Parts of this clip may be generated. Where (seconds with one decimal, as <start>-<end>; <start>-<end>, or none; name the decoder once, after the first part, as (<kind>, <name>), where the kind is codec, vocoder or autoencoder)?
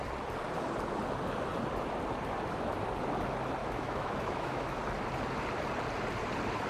3.6-4.8 (autoencoder, DAC-VAE)